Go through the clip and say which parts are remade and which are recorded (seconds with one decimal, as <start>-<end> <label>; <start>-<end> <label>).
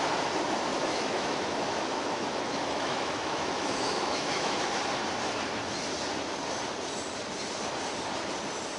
0.0-0.7 recorded; 0.7-4.7 remade; 4.7-8.8 recorded